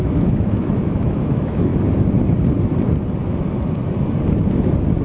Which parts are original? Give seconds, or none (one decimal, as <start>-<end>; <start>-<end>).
1.7-5.0